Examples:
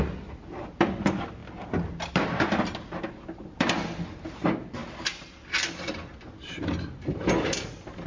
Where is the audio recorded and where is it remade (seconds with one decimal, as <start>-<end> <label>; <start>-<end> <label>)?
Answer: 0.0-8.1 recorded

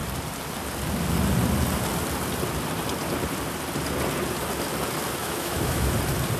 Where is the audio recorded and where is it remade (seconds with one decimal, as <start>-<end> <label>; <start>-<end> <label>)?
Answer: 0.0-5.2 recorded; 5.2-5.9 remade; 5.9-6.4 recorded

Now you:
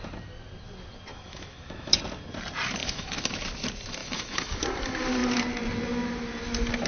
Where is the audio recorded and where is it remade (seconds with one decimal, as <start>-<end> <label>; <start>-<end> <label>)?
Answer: 0.0-1.1 recorded; 1.1-2.0 remade; 2.0-2.8 recorded; 2.8-3.3 remade; 3.3-4.0 recorded; 4.0-4.6 remade; 4.6-6.9 recorded

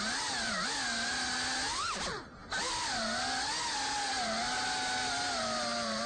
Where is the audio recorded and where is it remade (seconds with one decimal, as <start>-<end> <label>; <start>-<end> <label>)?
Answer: 0.0-6.1 recorded